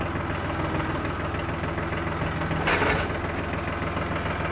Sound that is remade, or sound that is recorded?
recorded